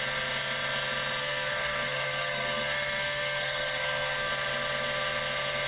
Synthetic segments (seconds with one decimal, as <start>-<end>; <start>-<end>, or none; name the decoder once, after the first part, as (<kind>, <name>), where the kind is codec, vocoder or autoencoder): 1.2-4.3 (codec, SNAC)